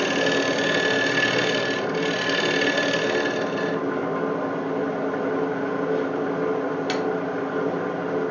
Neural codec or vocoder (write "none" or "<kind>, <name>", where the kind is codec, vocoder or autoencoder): none